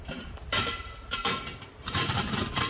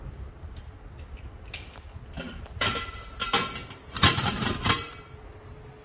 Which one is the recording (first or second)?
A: second